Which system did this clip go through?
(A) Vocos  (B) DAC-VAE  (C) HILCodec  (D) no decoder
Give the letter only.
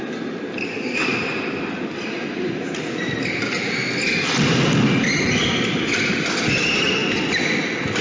D